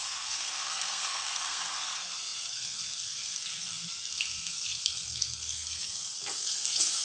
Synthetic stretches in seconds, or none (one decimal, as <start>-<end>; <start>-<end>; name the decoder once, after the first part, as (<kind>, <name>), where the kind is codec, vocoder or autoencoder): 0.0-7.0 (codec, SNAC)